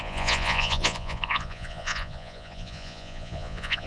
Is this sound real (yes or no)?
no